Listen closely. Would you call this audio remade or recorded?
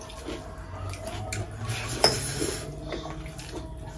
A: recorded